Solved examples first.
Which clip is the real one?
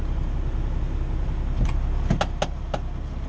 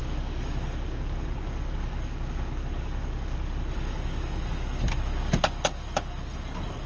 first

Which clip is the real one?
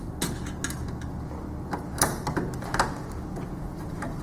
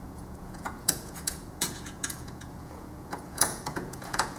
first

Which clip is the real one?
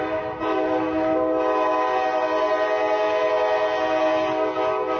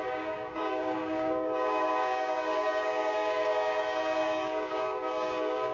first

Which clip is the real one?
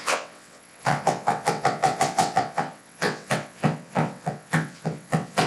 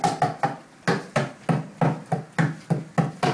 second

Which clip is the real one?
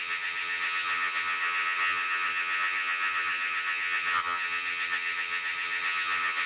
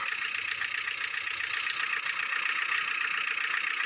second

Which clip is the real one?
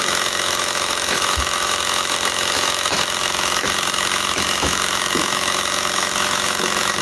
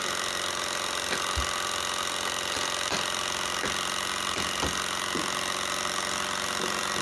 second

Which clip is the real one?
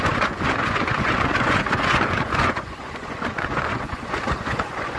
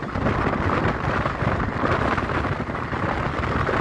second